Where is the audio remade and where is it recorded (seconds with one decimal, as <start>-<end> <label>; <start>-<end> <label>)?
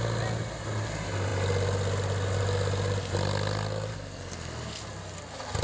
0.0-3.9 recorded; 3.9-4.8 remade; 4.8-5.6 recorded